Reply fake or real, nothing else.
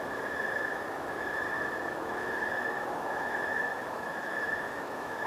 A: fake